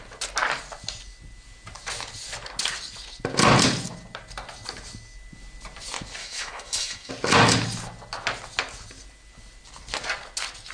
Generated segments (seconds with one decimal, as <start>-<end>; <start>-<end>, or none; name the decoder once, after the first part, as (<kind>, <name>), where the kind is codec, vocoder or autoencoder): 6.2-7.1 (autoencoder, DAC-VAE)